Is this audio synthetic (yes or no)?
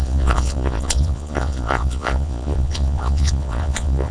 yes